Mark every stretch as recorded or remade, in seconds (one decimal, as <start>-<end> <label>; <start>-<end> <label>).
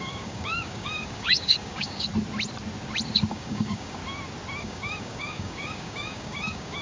0.0-2.1 remade; 2.1-3.3 recorded; 3.3-4.0 remade; 4.0-4.6 recorded; 4.6-6.8 remade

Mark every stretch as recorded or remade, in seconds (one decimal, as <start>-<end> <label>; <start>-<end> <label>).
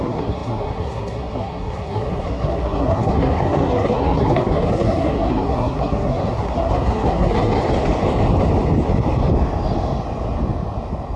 0.0-7.6 remade; 7.6-11.2 recorded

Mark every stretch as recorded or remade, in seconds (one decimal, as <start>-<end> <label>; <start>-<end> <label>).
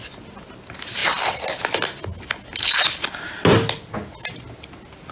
0.0-5.1 recorded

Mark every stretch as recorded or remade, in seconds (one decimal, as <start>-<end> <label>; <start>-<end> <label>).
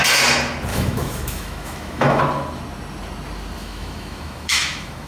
0.0-0.7 recorded; 0.7-2.2 remade; 2.2-3.6 recorded; 3.6-5.1 remade